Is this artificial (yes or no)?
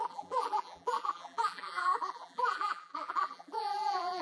yes